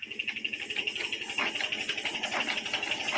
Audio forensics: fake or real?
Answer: real